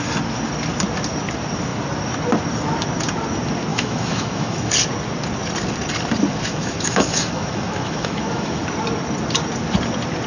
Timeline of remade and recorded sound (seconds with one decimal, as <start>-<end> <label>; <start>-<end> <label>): 0.0-3.7 recorded; 3.7-4.7 remade; 4.7-6.3 recorded; 6.3-8.6 remade; 8.6-10.3 recorded